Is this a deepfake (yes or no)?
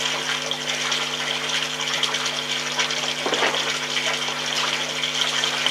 no